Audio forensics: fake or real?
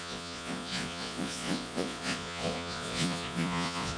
fake